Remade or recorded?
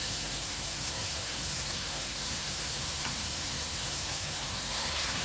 remade